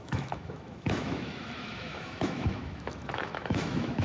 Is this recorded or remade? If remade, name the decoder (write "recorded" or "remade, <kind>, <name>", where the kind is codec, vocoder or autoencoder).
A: remade, autoencoder, DAC-VAE